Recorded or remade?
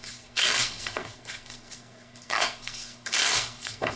remade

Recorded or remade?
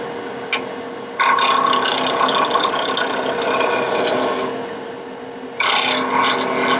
recorded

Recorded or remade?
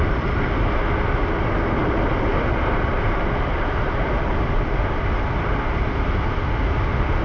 recorded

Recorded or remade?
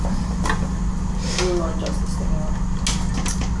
recorded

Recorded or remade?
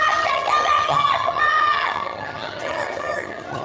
remade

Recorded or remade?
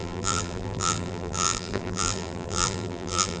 remade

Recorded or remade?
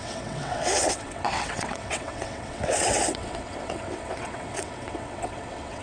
remade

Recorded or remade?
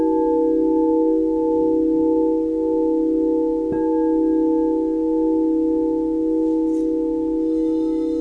recorded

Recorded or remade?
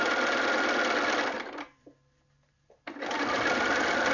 recorded